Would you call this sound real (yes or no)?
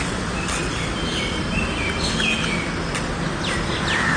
yes